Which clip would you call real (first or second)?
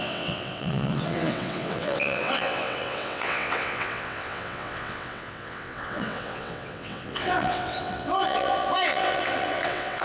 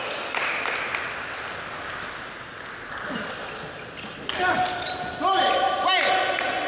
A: second